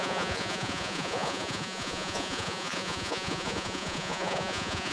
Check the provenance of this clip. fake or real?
fake